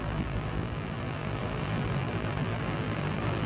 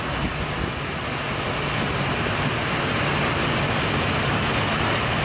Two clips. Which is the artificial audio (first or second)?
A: first